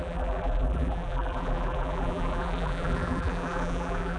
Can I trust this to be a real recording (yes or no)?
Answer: no